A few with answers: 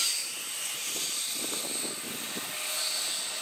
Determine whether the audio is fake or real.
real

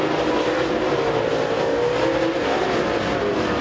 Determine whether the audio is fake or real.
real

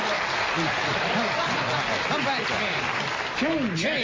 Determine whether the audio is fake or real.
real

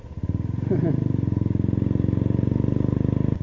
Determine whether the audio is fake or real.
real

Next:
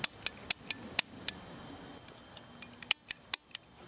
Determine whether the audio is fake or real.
real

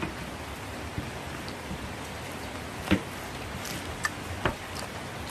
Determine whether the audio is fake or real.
real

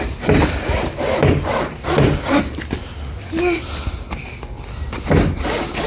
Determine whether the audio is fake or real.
real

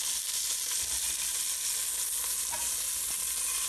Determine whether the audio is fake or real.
real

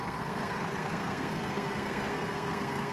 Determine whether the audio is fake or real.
fake